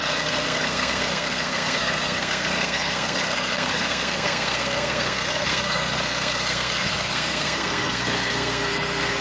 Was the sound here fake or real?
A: fake